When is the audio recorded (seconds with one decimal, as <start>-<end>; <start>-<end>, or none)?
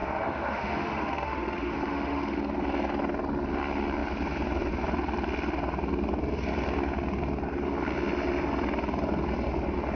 2.4-10.0